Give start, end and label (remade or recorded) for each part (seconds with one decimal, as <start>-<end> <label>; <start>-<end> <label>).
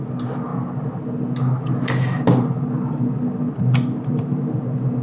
0.0-5.0 recorded